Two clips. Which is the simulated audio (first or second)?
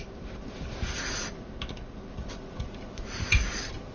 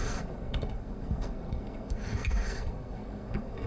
second